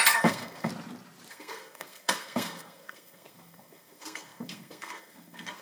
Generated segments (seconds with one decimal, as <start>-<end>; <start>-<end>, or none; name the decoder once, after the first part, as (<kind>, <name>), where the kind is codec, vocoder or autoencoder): 0.0-0.7 (codec, SNAC); 1.3-5.6